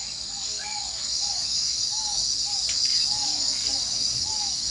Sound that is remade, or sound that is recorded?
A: remade